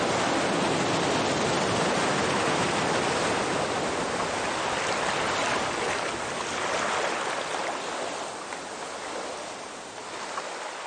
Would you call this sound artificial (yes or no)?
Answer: no